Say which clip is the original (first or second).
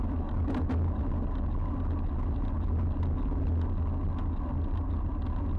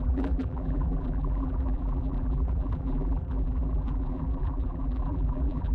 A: first